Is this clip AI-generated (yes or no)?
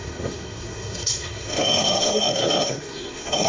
yes